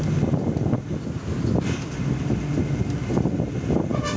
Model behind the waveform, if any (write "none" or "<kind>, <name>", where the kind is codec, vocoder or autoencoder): none